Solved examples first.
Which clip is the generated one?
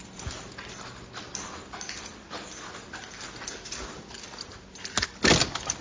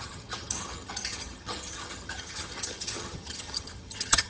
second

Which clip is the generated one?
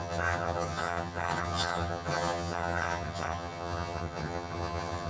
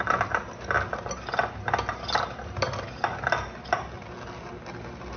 first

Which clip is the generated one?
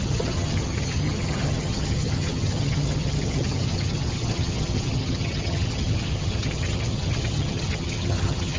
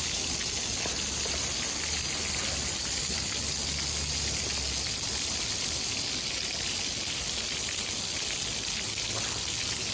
first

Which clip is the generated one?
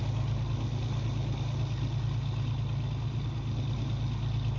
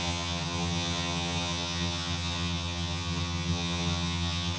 second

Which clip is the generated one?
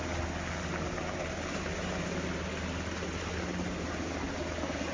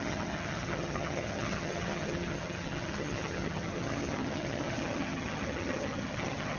second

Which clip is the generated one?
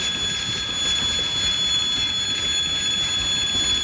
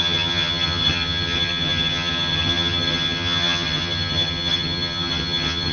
second